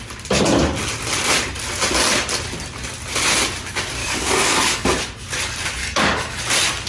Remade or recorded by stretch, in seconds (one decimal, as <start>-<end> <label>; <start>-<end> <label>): 0.0-4.0 recorded; 4.0-4.9 remade; 4.9-5.8 recorded; 5.8-6.4 remade; 6.4-6.9 recorded